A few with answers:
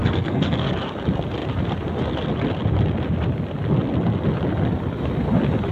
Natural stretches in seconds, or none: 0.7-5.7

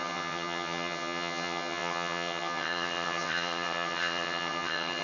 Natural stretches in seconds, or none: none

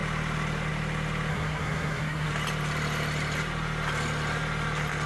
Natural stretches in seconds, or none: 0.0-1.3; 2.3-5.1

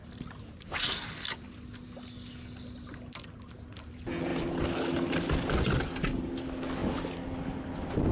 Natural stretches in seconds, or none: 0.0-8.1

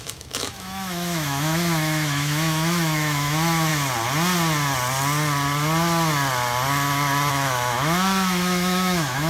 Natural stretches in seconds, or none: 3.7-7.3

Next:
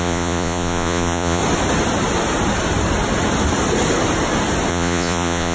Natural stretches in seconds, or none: 1.4-4.7

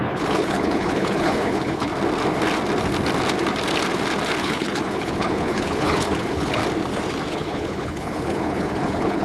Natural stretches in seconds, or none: 1.9-4.4; 6.6-7.3

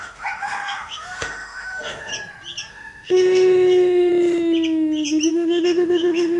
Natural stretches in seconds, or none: 2.1-2.7; 4.1-5.3